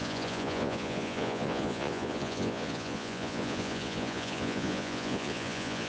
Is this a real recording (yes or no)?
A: no